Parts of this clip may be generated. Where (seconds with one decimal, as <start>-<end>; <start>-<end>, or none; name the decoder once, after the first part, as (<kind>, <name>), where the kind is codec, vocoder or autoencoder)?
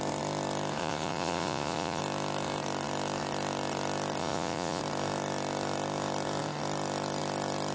0.8-2.0 (vocoder, Vocos); 4.2-4.8